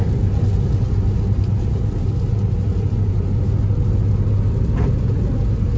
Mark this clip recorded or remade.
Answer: recorded